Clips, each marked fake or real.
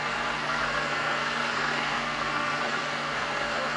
fake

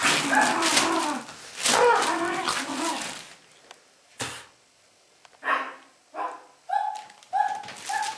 real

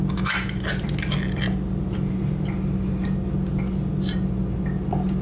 real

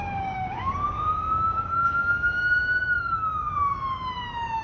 fake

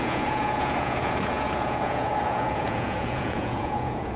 fake